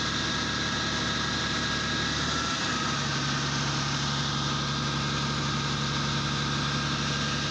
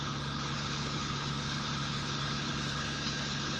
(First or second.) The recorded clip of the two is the first